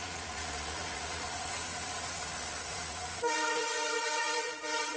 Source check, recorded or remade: remade